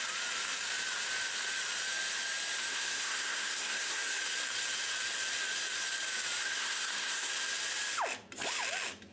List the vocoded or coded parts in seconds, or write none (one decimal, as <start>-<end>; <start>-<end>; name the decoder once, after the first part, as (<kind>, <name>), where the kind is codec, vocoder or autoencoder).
2.7-4.2 (codec, SNAC); 6.4-7.3